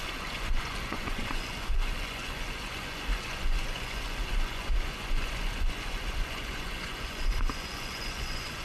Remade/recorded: remade